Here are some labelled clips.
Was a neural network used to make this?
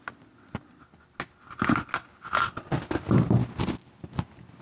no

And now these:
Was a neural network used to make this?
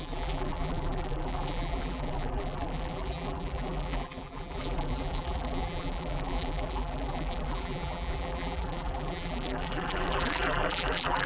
yes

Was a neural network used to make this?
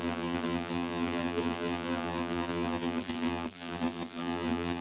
yes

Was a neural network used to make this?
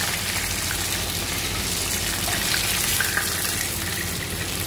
yes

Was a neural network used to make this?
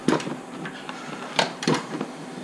yes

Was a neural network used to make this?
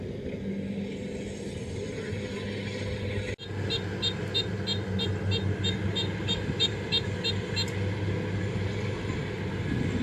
no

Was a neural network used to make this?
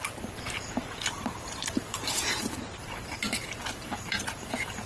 yes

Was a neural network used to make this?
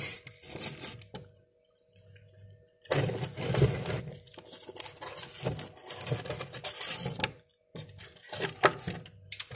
no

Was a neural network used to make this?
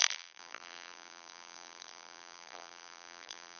yes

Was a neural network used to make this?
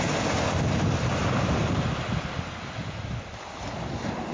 no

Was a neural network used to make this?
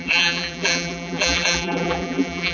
yes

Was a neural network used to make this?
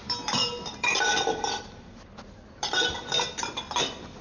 yes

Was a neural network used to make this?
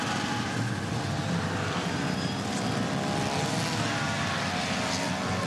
no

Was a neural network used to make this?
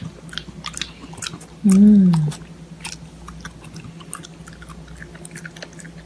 no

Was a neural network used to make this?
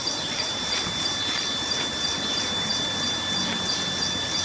no